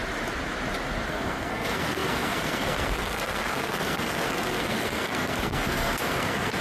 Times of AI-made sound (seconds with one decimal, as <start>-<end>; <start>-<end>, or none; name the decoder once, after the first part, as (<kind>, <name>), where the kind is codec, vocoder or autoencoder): 1.1-6.6 (codec, SNAC)